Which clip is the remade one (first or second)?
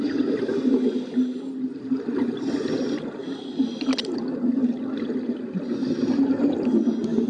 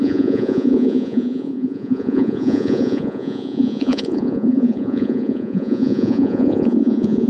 second